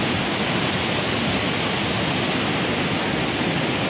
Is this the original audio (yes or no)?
yes